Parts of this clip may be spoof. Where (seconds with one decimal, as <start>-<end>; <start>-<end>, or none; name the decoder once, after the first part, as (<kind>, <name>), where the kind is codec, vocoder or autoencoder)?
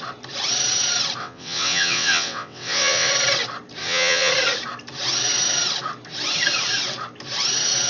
1.2-3.1 (vocoder, WaveNeXt); 3.8-4.3